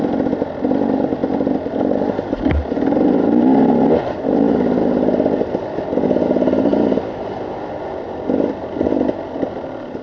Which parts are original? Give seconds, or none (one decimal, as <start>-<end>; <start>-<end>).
0.0-10.0